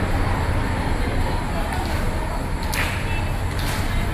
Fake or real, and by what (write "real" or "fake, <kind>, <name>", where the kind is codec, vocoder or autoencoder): real